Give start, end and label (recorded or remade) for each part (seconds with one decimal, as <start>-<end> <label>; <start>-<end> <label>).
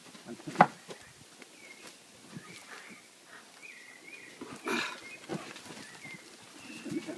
0.0-7.2 recorded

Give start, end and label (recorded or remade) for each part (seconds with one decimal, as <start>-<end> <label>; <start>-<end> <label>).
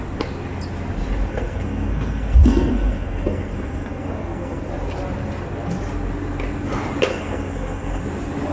0.0-1.3 recorded; 1.3-4.7 remade; 4.7-7.1 recorded; 7.1-8.0 remade; 8.0-8.5 recorded